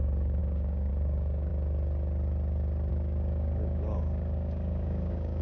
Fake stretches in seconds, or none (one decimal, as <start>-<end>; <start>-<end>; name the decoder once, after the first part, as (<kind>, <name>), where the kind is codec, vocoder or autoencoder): 0.0-1.5 (codec, DAC); 2.9-5.4